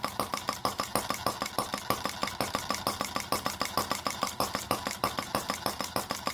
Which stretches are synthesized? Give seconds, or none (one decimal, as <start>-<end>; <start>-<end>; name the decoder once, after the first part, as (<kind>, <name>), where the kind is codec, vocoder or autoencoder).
none